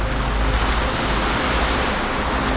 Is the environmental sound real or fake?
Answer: real